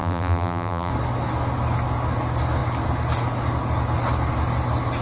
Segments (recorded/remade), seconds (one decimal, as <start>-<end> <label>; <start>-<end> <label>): 0.0-0.9 remade; 0.9-5.0 recorded